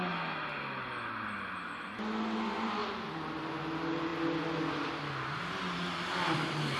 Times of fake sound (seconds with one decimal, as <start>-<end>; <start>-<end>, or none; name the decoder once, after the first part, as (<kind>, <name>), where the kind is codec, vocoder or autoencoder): none